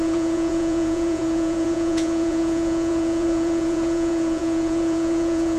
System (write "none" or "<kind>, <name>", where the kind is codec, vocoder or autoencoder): vocoder, Vocos